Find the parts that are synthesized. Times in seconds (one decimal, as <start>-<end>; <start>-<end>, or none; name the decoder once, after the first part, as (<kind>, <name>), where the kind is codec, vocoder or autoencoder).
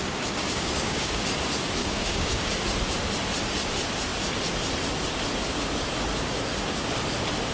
0.0-1.2 (codec, DAC); 1.8-2.5